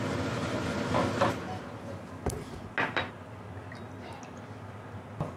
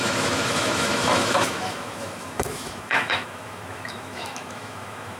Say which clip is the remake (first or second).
second